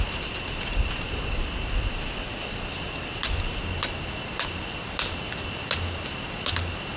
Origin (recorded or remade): recorded